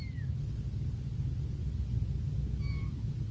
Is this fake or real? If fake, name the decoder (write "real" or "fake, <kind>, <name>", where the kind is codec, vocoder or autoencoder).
real